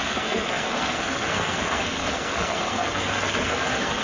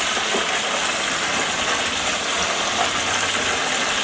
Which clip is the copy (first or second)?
first